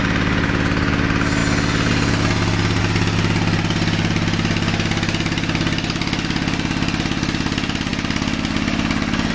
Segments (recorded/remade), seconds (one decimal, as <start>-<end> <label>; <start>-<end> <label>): 0.0-9.3 recorded